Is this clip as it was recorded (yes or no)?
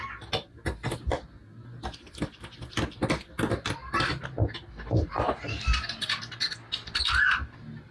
yes